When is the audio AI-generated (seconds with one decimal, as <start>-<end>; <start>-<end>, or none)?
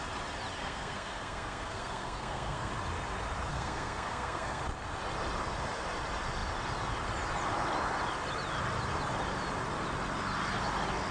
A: 0.6-2.7; 3.5-4.6